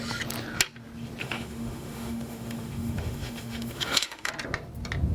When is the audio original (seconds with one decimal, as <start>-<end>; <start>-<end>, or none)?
0.0-1.2; 4.3-5.1